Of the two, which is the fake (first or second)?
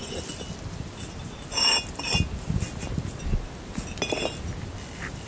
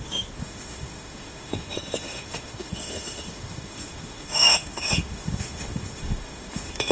second